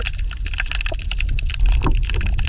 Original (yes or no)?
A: yes